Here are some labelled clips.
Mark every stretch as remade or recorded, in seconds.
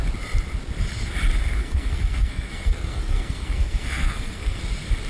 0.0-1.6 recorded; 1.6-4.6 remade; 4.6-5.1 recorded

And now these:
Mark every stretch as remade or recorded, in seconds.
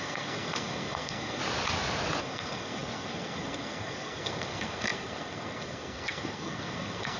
0.0-1.4 remade; 1.4-2.2 recorded; 2.2-7.2 remade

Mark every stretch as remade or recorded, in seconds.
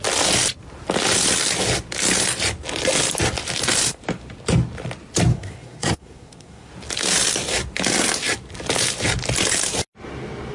0.0-5.3 recorded; 5.3-6.7 remade; 6.7-10.5 recorded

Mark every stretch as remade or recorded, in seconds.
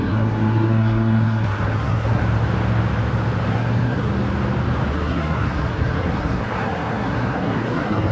0.0-2.2 remade; 2.2-3.5 recorded; 3.5-4.1 remade; 4.1-4.9 recorded; 4.9-8.1 remade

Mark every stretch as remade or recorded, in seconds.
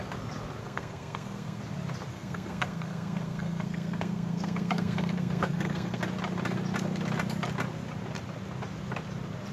0.0-0.6 recorded; 0.6-1.6 remade; 1.6-2.1 recorded; 2.1-6.0 remade; 6.0-9.5 recorded